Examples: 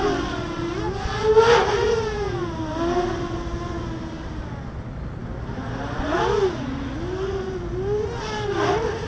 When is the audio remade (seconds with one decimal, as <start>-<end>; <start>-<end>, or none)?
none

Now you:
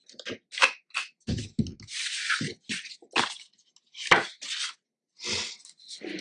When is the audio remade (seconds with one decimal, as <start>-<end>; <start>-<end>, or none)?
none

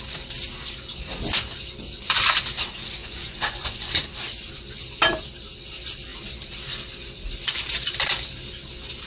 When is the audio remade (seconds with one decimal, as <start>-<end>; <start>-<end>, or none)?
3.0-3.9

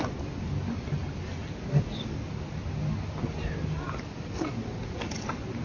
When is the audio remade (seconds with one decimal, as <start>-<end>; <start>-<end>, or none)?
none

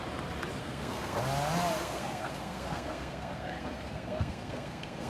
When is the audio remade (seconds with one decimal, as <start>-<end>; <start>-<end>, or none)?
0.6-1.2; 1.8-5.1